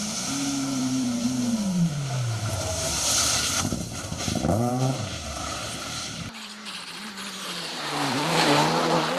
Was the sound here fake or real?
fake